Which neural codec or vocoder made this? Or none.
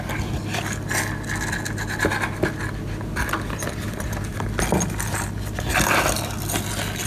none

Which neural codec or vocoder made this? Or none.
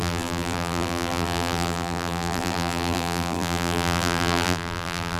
vocoder, BigVGAN v2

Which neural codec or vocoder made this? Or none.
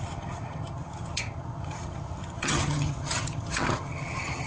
vocoder, HiFi-GAN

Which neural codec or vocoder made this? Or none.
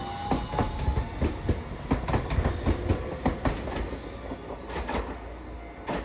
none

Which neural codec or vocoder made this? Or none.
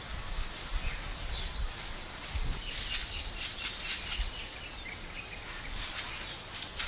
none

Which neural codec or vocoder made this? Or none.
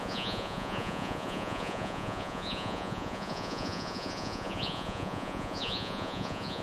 vocoder, Vocos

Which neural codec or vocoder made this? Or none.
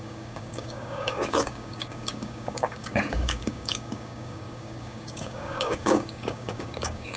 codec, DAC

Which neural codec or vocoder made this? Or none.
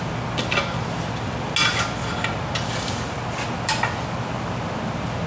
none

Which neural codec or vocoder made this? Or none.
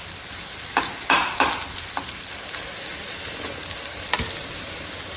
none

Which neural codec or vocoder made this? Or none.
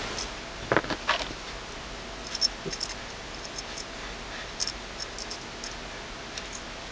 none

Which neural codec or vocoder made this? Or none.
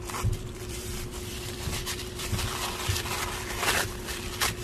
vocoder, BigVGAN v2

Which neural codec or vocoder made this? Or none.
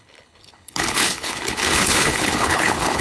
codec, HILCodec